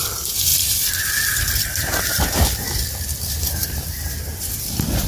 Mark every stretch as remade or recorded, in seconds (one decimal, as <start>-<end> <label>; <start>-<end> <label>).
0.0-5.1 remade